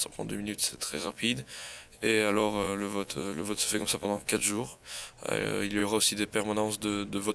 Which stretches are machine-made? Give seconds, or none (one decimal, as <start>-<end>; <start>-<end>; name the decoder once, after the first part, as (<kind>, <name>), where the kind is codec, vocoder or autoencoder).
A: 0.7-5.1 (vocoder, Vocos)